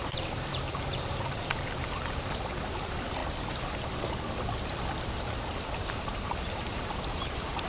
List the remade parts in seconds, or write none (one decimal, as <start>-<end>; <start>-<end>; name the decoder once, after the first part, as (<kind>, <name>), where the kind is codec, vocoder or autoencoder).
0.0-3.2 (vocoder, BigVGAN v2); 5.9-7.7